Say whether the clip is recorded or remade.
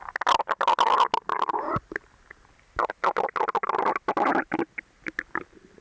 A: recorded